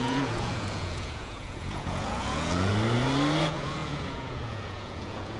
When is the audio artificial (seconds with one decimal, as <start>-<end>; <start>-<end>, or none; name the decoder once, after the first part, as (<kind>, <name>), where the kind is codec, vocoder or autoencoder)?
0.0-2.7 (vocoder, Vocos); 3.4-5.4